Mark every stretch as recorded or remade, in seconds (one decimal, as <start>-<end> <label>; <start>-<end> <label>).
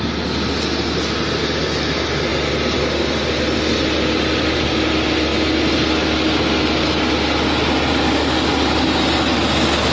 0.0-9.9 recorded